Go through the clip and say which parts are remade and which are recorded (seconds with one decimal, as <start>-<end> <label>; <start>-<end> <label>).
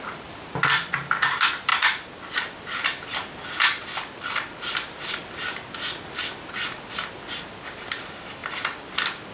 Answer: 0.0-9.3 recorded